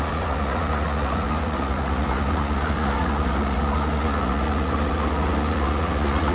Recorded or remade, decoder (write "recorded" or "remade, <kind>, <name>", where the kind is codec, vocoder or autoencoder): remade, vocoder, Vocos